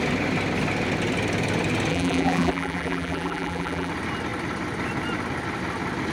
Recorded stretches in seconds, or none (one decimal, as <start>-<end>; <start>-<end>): 0.0-1.9; 3.9-6.1